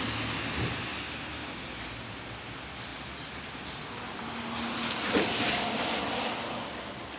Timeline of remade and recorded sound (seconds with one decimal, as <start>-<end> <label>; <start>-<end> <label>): 0.0-7.2 recorded